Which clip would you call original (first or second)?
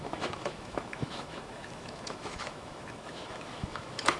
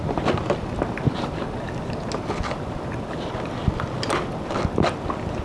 second